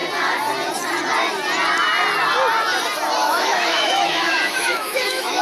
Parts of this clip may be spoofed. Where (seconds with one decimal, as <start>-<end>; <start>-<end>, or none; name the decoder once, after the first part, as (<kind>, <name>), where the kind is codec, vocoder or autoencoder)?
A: 3.2-5.4 (autoencoder, DAC-VAE)